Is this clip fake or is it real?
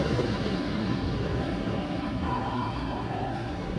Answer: fake